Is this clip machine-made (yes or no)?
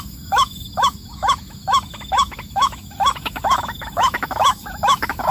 yes